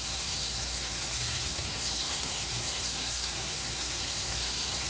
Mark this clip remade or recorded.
remade